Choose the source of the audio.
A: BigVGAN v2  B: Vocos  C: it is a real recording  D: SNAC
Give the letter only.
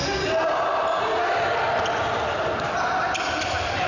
C